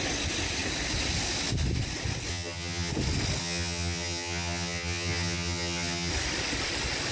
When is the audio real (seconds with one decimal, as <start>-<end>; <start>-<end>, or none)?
0.0-2.3; 2.9-3.4; 6.1-7.1